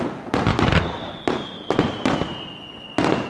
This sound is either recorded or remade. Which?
recorded